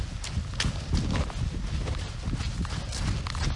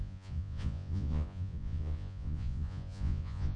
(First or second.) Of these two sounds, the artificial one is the second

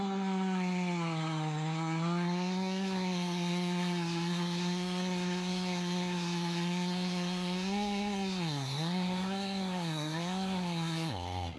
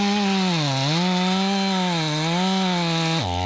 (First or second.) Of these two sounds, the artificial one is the first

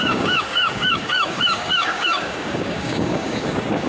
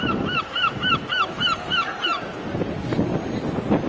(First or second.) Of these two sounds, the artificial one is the first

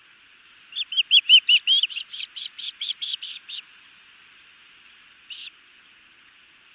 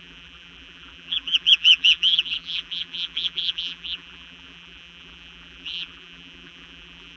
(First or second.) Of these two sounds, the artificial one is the second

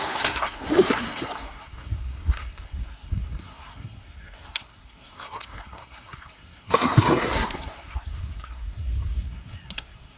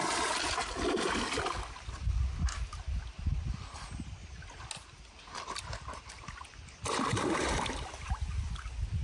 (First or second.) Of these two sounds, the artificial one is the first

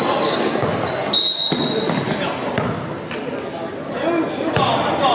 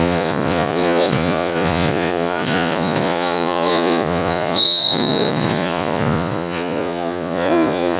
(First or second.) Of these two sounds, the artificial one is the second